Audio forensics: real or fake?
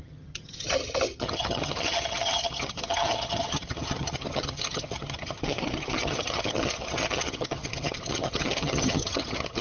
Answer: fake